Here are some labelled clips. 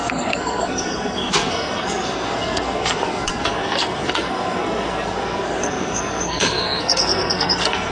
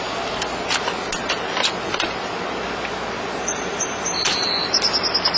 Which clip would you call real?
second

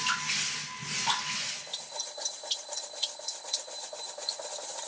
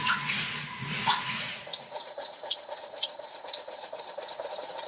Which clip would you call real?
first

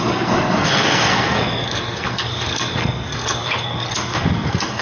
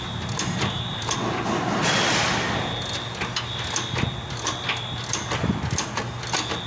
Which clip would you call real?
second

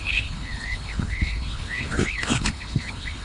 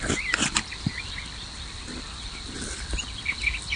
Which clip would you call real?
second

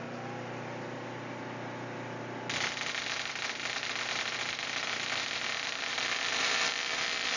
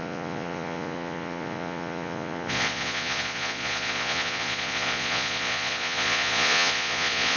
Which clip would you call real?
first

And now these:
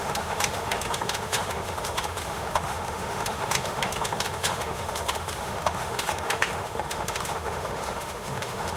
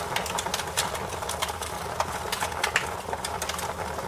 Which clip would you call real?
second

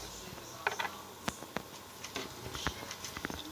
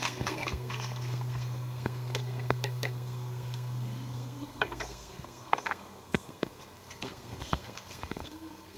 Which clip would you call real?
first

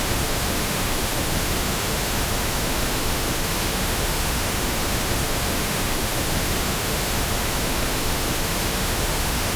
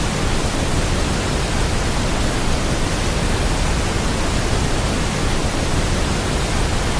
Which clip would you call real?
second